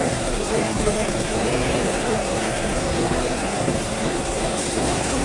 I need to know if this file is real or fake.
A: fake